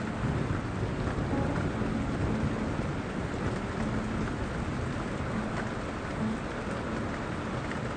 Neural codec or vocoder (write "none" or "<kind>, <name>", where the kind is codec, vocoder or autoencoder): none